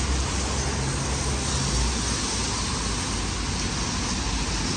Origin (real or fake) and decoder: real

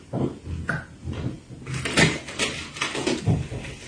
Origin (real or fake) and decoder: real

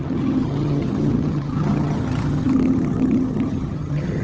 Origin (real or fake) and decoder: fake, vocoder, HiFi-GAN